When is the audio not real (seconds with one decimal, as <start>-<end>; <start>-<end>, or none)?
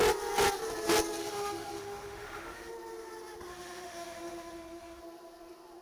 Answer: 1.2-2.7; 3.5-5.0